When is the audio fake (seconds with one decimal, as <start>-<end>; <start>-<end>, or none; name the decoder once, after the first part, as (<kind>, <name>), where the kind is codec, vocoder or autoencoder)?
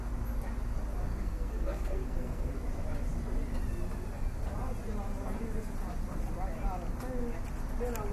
1.1-2.5 (codec, SNAC)